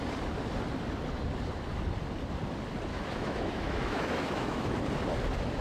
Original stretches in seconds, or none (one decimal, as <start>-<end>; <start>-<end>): 0.0-2.9; 4.9-5.6

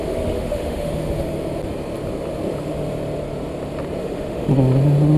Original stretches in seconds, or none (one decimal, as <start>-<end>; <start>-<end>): 0.9-4.0; 4.5-5.2

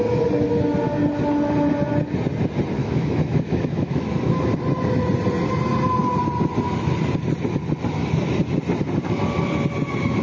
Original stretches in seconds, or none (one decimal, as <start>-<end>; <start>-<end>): 0.0-2.8; 4.3-10.2